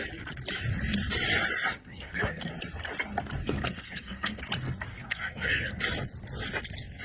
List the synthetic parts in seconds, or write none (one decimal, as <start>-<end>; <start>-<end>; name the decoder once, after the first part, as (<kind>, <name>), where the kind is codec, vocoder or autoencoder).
1.8-2.5 (codec, SNAC); 3.4-4.4; 4.9-5.8